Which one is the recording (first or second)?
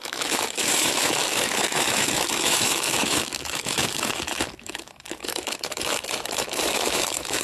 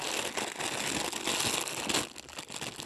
second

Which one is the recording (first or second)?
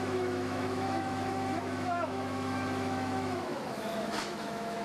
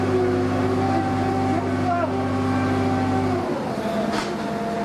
second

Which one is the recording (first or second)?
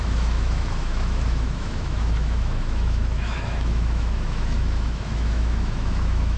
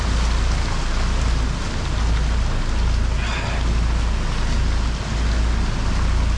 second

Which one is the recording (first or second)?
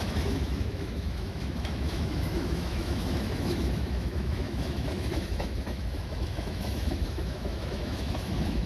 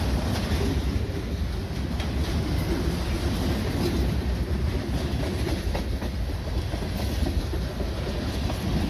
second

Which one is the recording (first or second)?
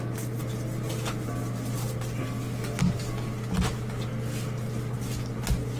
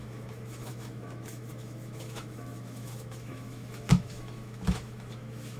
first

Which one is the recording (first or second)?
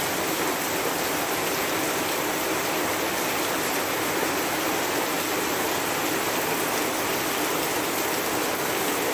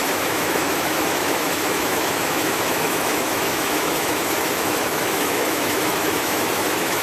first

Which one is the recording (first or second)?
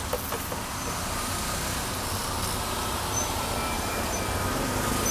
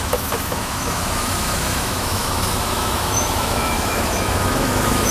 first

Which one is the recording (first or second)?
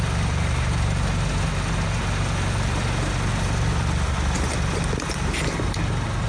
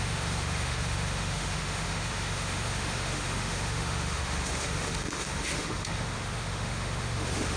first